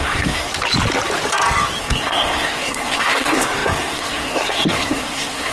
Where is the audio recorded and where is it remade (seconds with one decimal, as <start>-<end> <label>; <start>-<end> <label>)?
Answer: 0.0-0.5 remade; 0.5-1.8 recorded; 1.8-5.5 remade